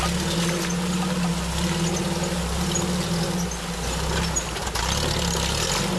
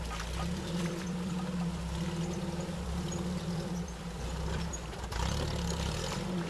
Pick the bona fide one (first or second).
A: first